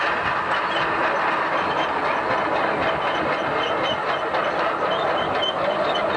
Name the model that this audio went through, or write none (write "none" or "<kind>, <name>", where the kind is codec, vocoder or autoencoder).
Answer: none